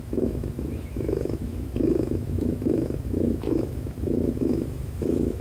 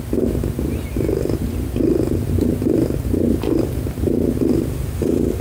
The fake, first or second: first